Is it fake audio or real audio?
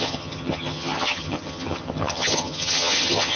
fake